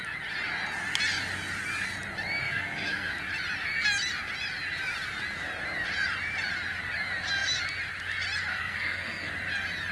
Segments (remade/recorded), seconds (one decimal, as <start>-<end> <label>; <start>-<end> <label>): 0.0-2.4 recorded; 2.4-3.1 remade; 3.1-8.5 recorded; 8.5-9.3 remade; 9.3-9.9 recorded